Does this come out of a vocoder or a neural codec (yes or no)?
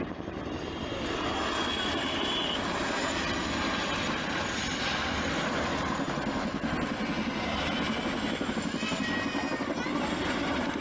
no